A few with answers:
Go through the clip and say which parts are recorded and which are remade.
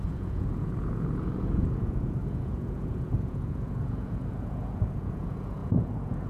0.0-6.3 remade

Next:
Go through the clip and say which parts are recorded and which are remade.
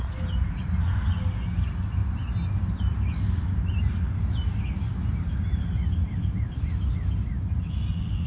0.0-8.3 recorded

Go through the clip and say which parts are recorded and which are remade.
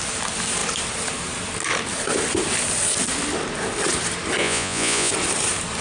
0.0-4.4 recorded; 4.4-5.1 remade; 5.1-5.8 recorded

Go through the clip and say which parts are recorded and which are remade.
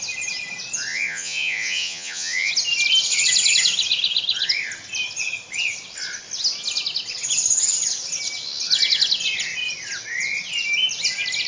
0.0-0.9 recorded; 0.9-2.5 remade; 2.5-11.5 recorded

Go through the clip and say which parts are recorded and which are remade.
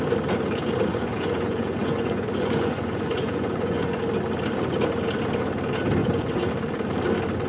0.0-0.9 recorded; 0.9-4.0 remade; 4.0-6.0 recorded; 6.0-6.5 remade; 6.5-7.5 recorded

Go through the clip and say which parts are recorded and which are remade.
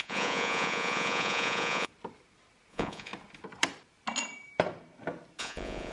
0.0-1.9 remade; 1.9-2.7 recorded; 2.7-3.1 remade; 3.1-5.4 recorded; 5.4-5.9 remade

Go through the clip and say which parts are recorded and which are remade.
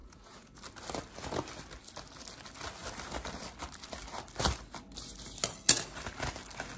0.0-0.6 remade; 0.6-6.8 recorded